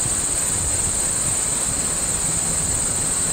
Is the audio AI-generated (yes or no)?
no